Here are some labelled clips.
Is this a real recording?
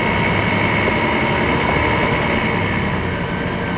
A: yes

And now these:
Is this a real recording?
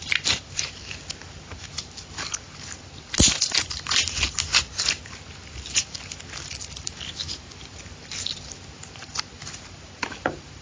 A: yes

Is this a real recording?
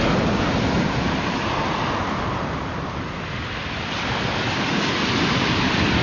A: yes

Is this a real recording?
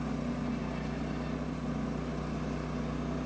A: yes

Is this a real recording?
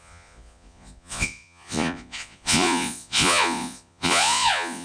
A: no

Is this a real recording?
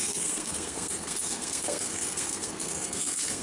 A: no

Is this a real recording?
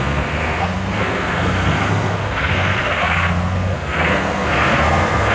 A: no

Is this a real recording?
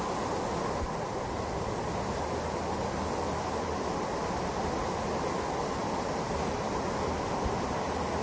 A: yes